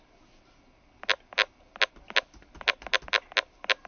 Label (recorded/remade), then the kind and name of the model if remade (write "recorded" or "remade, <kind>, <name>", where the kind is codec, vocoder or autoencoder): recorded